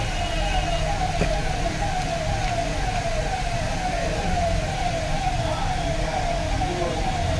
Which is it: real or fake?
real